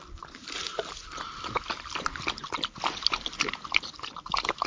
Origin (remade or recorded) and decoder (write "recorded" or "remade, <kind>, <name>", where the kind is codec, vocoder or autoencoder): recorded